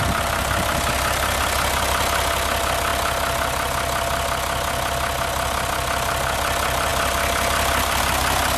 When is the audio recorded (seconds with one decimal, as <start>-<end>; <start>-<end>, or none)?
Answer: 0.0-8.6

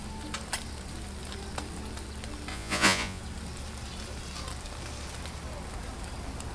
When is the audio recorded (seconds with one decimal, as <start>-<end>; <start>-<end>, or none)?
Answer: 0.0-2.5; 3.2-6.5

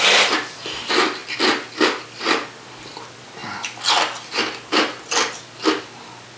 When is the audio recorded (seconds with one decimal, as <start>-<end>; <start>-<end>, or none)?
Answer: 0.0-6.4

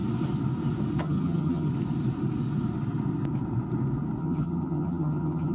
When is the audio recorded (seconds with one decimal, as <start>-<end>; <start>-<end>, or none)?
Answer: 0.0-1.0; 1.7-4.2

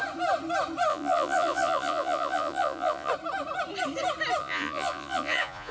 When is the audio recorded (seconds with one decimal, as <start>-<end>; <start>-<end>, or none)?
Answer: 0.0-0.9; 3.1-4.4

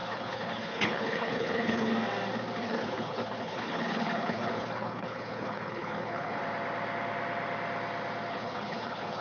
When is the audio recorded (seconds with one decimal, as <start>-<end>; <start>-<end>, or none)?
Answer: 1.9-2.6; 6.4-8.3

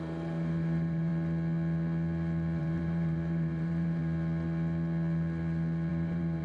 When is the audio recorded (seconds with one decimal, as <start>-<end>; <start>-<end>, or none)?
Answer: 1.1-2.6; 4.0-5.9

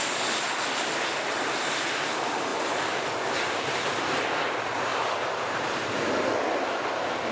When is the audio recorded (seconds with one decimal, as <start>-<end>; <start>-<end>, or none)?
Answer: 0.0-2.5; 4.2-4.9; 6.1-7.3